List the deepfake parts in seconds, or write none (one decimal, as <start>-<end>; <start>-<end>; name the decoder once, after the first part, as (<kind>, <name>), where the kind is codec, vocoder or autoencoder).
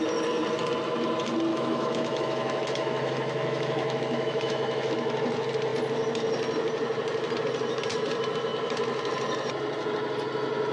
1.5-4.9 (autoencoder, DAC-VAE)